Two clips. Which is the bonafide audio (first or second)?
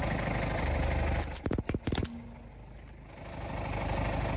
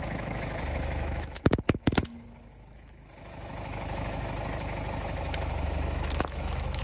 first